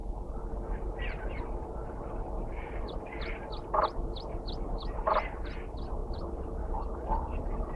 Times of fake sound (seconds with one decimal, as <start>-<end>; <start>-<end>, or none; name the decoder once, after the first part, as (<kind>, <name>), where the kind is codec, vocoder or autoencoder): 1.0-7.8 (vocoder, BigVGAN v2)